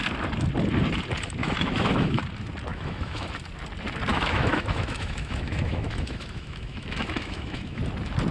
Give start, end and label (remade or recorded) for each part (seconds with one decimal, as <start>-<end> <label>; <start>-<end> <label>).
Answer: 0.0-1.4 recorded; 1.4-2.2 remade; 2.2-2.7 recorded; 2.7-3.3 remade; 3.3-4.1 recorded; 4.1-7.8 remade; 7.8-8.3 recorded